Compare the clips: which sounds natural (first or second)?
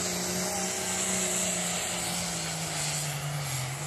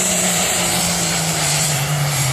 first